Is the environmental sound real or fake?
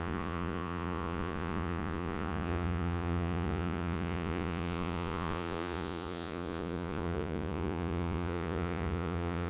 fake